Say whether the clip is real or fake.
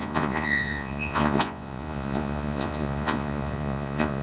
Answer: fake